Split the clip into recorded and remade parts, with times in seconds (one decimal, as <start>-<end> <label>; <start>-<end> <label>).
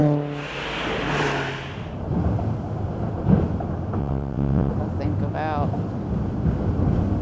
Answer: 0.0-4.0 recorded; 4.0-4.7 remade; 4.7-7.2 recorded